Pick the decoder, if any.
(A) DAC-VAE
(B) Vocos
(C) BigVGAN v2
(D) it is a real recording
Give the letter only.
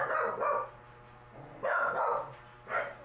D